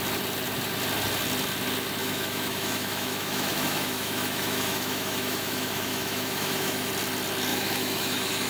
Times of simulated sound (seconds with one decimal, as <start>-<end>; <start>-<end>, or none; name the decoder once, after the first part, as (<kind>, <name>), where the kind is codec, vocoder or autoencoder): 2.0-6.9 (autoencoder, DAC-VAE); 7.5-8.5